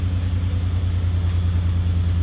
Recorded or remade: recorded